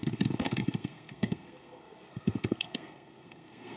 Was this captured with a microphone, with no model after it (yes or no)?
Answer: no